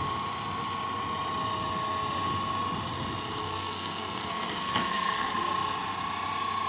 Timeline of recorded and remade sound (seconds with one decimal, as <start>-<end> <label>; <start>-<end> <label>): 0.0-3.4 recorded; 3.4-5.3 remade; 5.3-6.7 recorded